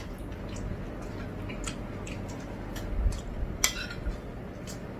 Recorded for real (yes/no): yes